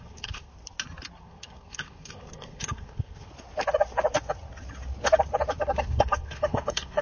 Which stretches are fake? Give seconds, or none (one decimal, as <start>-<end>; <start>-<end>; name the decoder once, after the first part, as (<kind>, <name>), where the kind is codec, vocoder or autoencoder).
0.0-0.5 (codec, SNAC); 1.2-3.3; 5.6-7.0